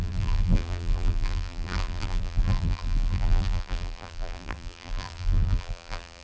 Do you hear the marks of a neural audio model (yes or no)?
yes